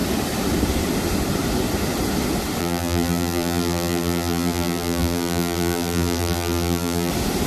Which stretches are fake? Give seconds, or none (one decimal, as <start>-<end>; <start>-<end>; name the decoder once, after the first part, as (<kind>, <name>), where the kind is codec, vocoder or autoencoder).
2.6-7.1 (vocoder, BigVGAN v2)